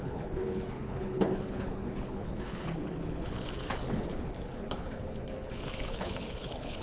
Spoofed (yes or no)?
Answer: yes